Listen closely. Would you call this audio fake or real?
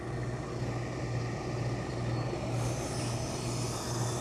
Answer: real